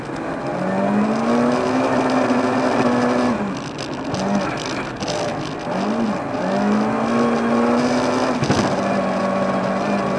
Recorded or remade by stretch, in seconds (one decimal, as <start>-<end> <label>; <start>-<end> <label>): 0.0-10.2 recorded